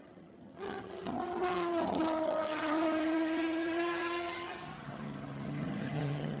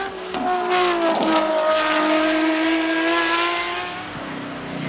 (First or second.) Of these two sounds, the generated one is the first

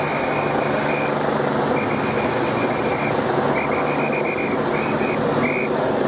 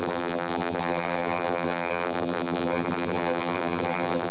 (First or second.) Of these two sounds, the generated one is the second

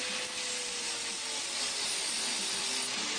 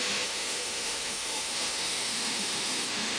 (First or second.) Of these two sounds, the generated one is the second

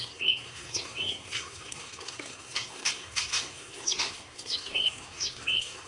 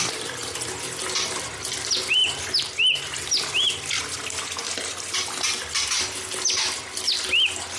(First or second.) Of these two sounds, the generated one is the first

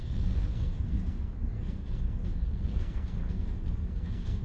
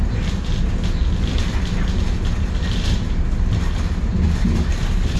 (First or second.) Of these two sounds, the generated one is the first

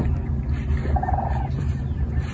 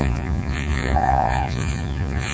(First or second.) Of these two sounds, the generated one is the second